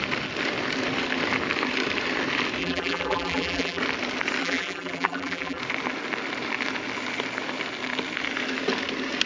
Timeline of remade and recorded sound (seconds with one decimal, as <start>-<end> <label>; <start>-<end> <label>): 0.0-2.6 recorded; 2.6-3.8 remade; 3.8-4.4 recorded; 4.4-5.6 remade; 5.6-9.3 recorded